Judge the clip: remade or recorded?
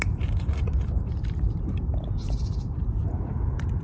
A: remade